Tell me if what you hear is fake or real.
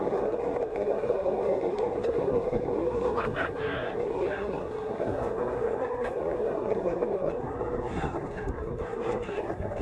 fake